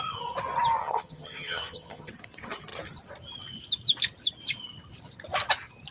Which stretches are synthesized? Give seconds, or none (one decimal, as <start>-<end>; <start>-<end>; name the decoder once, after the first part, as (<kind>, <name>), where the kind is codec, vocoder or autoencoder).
0.8-2.1 (vocoder, HiFi-GAN)